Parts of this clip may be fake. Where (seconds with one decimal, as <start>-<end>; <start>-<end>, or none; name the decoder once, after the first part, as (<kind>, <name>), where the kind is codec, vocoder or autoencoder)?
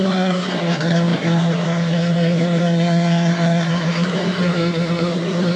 0.0-5.6 (codec, SNAC)